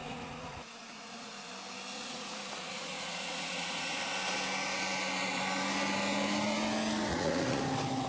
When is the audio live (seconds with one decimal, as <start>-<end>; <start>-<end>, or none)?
1.5-1.9; 4.0-7.1; 7.6-8.1